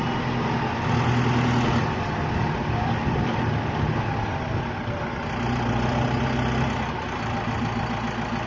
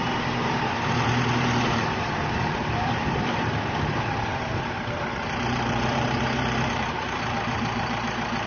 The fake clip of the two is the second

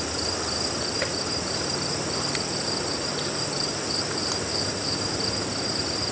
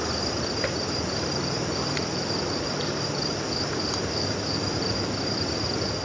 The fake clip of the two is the second